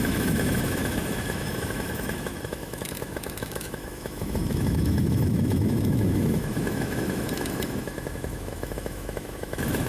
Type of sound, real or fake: fake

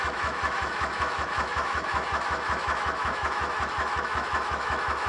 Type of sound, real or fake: fake